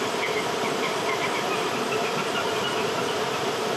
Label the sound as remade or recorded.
remade